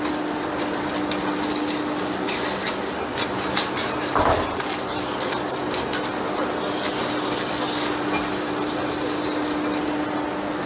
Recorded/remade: recorded